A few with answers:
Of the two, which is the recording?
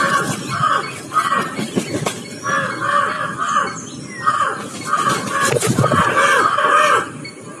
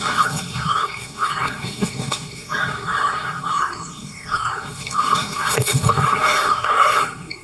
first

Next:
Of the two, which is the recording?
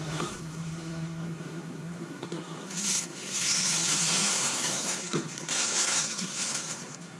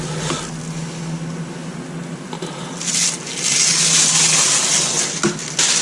second